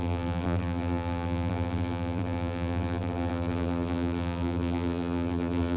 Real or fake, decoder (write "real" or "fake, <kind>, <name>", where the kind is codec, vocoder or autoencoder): fake, vocoder, BigVGAN v2